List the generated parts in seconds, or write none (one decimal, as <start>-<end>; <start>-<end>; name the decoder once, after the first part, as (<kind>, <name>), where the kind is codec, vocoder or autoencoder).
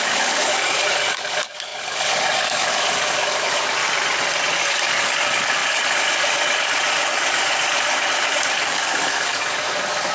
0.0-3.8 (codec, DAC); 4.5-10.1